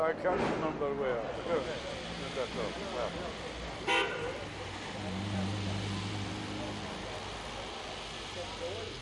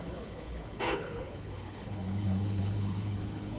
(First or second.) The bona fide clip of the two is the first